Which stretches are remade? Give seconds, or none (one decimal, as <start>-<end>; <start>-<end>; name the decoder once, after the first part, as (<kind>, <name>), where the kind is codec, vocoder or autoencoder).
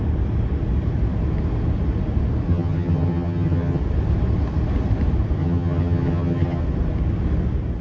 2.5-3.8 (vocoder, HiFi-GAN); 5.4-6.6